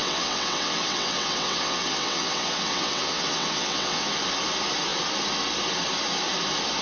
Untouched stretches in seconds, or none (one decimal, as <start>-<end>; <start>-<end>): 4.1-6.8